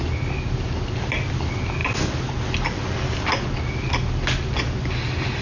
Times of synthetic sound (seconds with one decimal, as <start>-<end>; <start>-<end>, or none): none